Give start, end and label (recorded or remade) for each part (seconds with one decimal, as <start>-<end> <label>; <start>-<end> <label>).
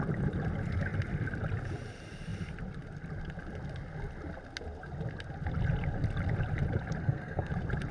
0.0-7.0 recorded; 7.0-7.5 remade; 7.5-7.9 recorded